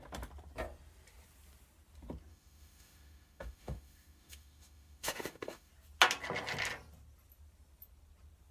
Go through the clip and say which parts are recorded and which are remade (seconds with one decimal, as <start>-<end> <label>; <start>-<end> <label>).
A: 0.0-2.3 recorded; 2.3-5.7 remade; 5.7-8.5 recorded